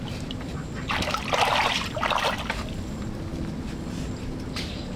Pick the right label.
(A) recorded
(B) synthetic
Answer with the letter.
A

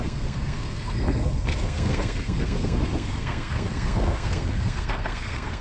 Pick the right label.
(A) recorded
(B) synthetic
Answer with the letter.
B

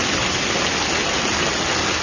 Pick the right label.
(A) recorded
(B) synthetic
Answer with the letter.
A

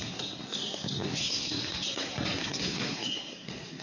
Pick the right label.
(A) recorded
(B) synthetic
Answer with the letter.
B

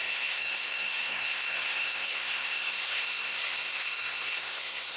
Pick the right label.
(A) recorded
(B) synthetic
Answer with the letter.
B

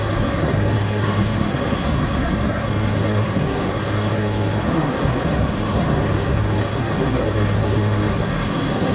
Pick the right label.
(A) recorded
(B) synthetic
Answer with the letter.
B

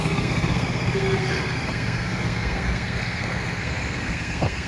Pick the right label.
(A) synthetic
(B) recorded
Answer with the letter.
A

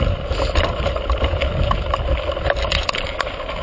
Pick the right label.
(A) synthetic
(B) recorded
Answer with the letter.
B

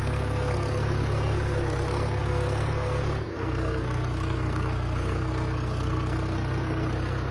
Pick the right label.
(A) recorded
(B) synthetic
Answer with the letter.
B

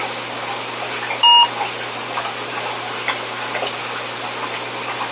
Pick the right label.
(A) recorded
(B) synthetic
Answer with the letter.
A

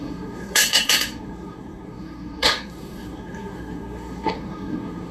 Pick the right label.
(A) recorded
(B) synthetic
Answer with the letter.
B